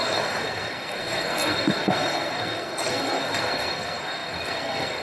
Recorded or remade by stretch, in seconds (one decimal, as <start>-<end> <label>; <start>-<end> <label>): 0.0-5.0 remade